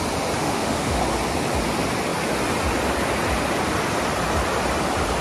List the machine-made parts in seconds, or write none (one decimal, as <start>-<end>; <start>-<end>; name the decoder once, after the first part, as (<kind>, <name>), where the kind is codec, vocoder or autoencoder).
0.4-1.0 (autoencoder, DAC-VAE)